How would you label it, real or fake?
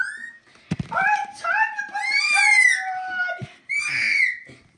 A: real